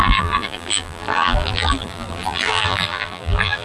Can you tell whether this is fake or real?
fake